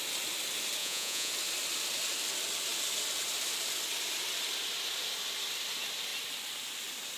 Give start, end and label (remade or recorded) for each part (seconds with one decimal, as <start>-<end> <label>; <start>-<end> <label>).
0.0-0.8 recorded; 0.8-1.3 remade; 1.3-7.2 recorded